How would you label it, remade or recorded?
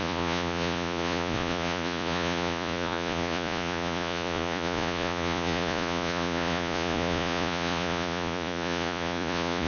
remade